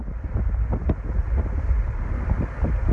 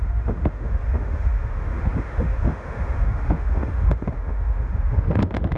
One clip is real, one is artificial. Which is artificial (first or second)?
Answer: second